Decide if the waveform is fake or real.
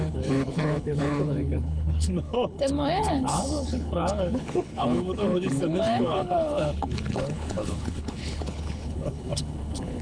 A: fake